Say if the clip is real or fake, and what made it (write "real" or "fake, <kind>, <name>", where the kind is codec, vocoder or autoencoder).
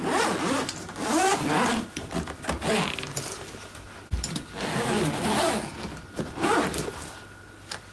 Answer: real